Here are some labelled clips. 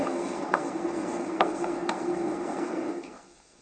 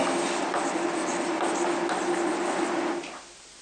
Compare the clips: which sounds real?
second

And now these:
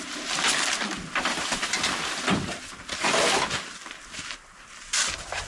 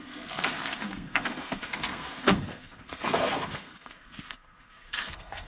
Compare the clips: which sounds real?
first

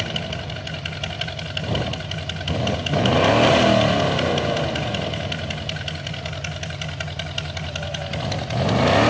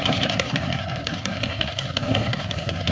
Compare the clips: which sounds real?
first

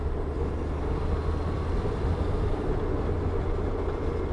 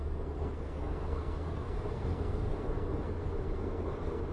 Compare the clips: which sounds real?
first